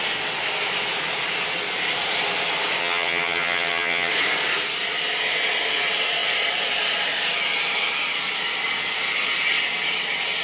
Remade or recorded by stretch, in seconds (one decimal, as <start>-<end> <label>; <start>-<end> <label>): 0.0-2.8 recorded; 2.8-4.1 remade; 4.1-10.4 recorded